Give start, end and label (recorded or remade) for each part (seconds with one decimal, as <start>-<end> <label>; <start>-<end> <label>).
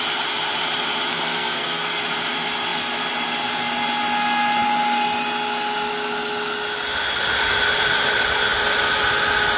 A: 0.0-1.1 recorded; 1.1-2.0 remade; 2.0-9.6 recorded